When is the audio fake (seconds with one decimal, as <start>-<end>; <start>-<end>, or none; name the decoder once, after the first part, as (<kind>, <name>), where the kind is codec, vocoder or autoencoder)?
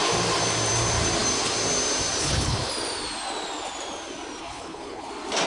2.2-2.7 (codec, HILCodec); 4.4-5.1